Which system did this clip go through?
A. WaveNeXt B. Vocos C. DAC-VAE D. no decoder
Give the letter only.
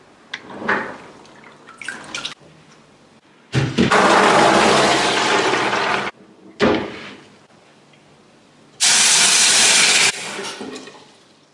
D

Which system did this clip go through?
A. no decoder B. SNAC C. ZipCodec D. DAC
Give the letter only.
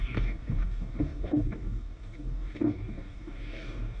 D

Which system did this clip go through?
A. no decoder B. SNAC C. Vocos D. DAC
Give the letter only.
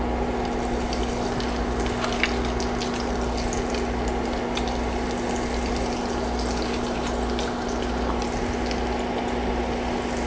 A